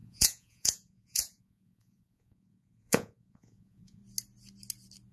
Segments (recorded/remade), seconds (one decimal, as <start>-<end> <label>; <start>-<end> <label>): 0.0-4.0 remade; 4.0-5.1 recorded